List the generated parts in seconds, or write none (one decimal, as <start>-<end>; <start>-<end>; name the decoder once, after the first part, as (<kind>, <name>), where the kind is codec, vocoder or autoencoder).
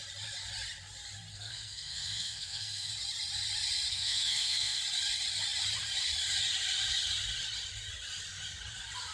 1.3-2.9 (codec, SNAC); 3.9-4.8